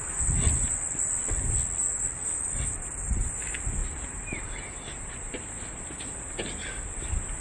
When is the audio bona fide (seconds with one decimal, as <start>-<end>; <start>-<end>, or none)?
0.0-7.4